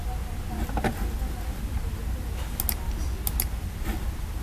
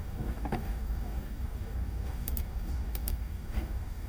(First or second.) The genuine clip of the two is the first